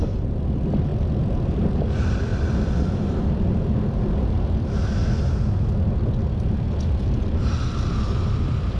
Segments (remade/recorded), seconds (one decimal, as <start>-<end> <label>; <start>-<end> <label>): 0.0-0.9 remade; 0.9-1.5 recorded; 1.5-5.0 remade; 5.0-8.0 recorded; 8.0-8.8 remade